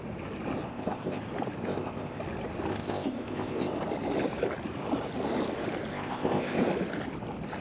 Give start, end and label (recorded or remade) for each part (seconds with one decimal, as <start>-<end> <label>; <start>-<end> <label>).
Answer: 0.0-0.7 recorded; 0.7-1.2 remade; 1.2-1.6 recorded; 1.6-2.2 remade; 2.2-2.7 recorded; 2.7-3.7 remade; 3.7-5.9 recorded; 5.9-6.6 remade; 6.6-7.6 recorded